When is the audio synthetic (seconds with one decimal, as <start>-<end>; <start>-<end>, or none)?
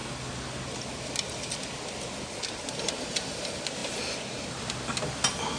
none